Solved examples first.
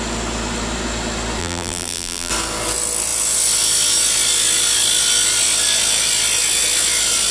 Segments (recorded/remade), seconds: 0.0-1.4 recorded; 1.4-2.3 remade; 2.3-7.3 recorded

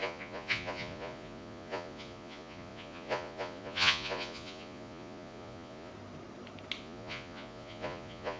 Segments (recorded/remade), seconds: 0.0-5.9 remade; 5.9-6.8 recorded; 6.8-8.4 remade

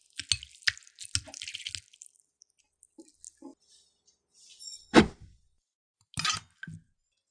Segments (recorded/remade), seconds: 0.0-7.3 recorded

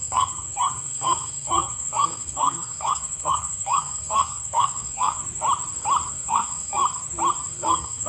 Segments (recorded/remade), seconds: 0.0-5.2 remade; 5.2-6.1 recorded; 6.1-6.8 remade; 6.8-7.5 recorded; 7.5-8.1 remade

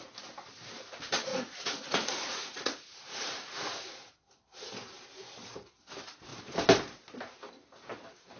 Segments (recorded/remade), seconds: 0.0-1.3 recorded; 1.3-4.3 remade; 4.3-8.4 recorded

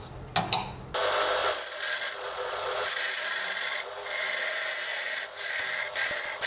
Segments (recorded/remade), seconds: 0.0-1.4 recorded; 1.4-3.9 remade; 3.9-6.5 recorded

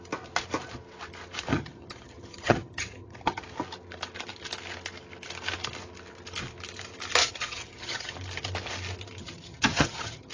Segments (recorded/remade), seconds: 0.0-1.5 recorded; 1.5-3.4 remade; 3.4-7.2 recorded; 7.2-8.1 remade; 8.1-9.2 recorded; 9.2-10.3 remade

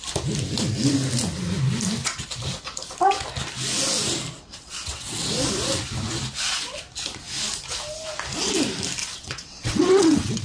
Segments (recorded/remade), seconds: 0.0-4.5 recorded; 4.5-5.3 remade; 5.3-9.0 recorded; 9.0-10.4 remade